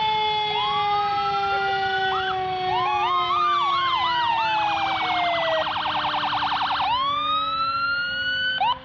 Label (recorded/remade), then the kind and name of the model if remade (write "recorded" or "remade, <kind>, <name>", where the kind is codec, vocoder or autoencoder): recorded